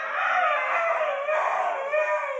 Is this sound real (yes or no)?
yes